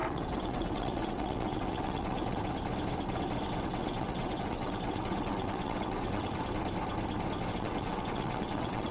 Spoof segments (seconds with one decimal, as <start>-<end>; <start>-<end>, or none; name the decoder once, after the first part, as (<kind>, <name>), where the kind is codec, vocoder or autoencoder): 0.0-2.4 (vocoder, WaveNeXt); 3.8-6.4; 7.5-8.9